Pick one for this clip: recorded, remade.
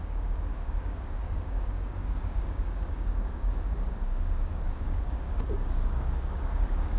remade